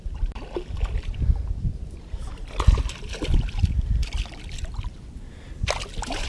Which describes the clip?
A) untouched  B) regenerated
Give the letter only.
B